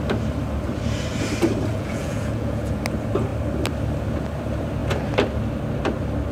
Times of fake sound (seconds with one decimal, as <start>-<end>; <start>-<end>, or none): 1.7-2.8